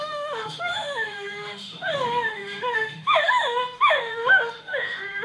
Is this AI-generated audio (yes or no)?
yes